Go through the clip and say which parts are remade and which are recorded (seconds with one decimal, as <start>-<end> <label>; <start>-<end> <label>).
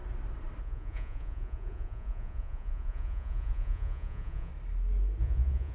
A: 0.0-0.6 recorded; 0.6-4.5 remade; 4.5-5.2 recorded; 5.2-5.7 remade